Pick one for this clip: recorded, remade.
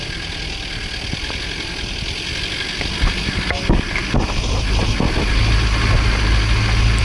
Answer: recorded